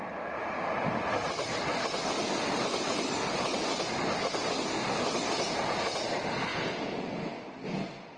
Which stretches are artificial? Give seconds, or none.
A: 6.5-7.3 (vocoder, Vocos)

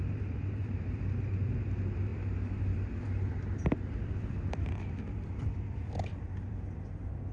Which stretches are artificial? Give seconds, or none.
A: 0.0-7.3 (vocoder, BigVGAN v2)

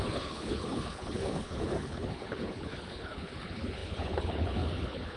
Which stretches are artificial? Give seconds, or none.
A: 0.0-5.2 (codec, HILCodec)

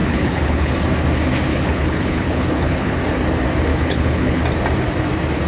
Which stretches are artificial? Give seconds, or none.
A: 0.0-0.7 (codec, HILCodec); 1.5-3.0; 3.7-4.4

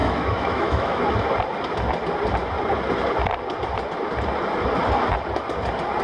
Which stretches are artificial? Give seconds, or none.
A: 0.0-1.0 (autoencoder, DAC-VAE)

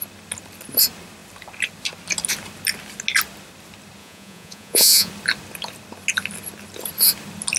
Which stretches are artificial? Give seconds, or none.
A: 4.0-5.1 (vocoder, Vocos)

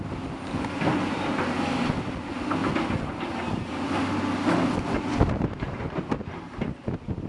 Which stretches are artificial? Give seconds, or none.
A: none

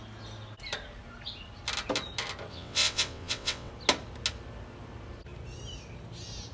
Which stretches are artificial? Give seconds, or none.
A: 2.5-3.7 (vocoder, WaveNeXt)